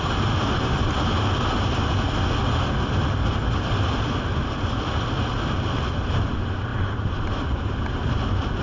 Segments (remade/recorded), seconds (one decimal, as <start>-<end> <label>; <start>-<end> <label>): 0.0-6.7 recorded; 6.7-8.1 remade; 8.1-8.6 recorded